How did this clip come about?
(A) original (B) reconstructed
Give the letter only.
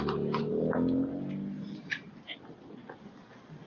A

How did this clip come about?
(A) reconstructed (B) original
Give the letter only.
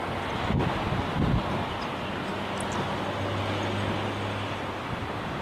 B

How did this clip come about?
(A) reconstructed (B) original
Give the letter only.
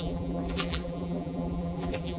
A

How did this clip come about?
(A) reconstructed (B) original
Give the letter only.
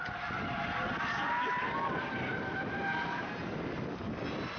B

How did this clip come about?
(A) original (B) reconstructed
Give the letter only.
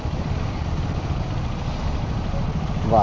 A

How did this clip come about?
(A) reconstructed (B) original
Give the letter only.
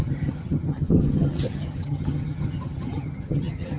A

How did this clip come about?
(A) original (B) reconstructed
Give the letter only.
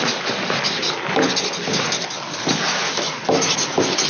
A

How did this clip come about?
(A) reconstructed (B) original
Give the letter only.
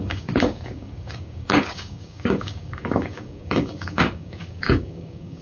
A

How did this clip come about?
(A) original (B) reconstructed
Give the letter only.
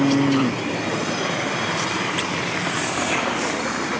B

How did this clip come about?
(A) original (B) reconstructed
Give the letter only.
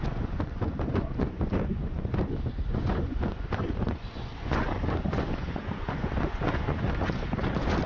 B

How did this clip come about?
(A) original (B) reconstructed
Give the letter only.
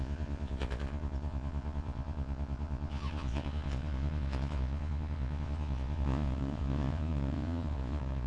B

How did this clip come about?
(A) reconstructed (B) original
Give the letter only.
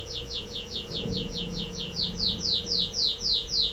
A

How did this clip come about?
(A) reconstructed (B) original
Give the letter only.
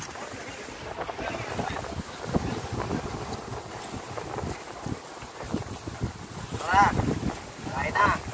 B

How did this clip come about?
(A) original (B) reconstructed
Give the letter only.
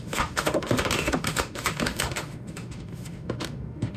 B